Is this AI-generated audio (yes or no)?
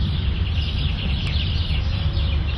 no